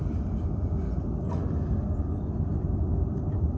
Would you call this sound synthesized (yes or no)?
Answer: no